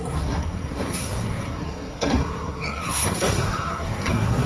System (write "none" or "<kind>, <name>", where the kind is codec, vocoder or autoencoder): codec, SNAC